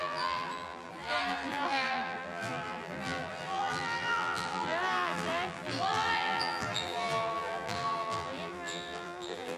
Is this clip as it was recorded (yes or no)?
no